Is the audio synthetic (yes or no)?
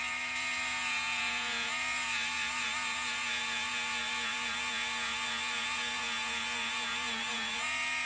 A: yes